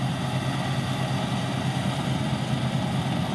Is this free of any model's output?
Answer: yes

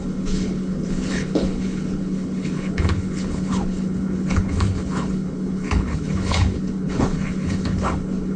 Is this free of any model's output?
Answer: no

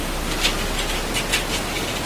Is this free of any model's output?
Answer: yes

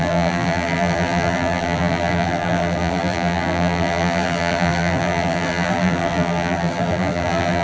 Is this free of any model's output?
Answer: no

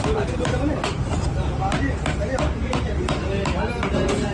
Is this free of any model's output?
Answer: yes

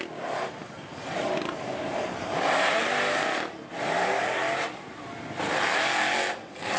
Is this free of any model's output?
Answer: yes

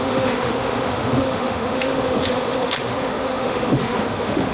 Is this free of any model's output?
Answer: no